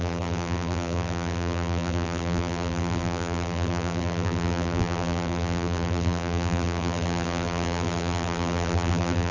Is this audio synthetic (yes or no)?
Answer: yes